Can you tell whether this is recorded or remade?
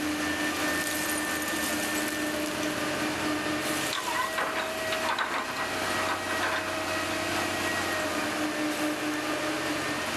recorded